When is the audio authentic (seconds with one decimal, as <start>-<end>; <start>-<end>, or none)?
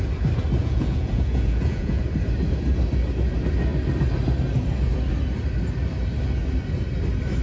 0.0-0.6; 2.0-7.4